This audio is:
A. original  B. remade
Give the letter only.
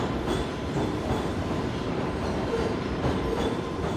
B